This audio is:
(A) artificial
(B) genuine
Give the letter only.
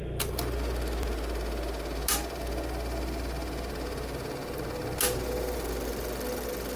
B